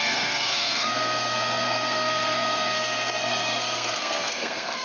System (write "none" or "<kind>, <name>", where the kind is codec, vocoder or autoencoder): codec, SNAC